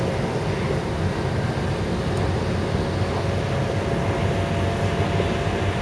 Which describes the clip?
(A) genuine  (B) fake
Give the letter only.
A